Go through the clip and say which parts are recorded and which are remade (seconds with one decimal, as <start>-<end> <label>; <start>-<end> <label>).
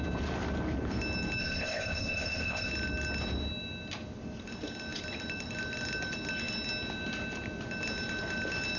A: 0.0-1.4 recorded; 1.4-2.7 remade; 2.7-8.8 recorded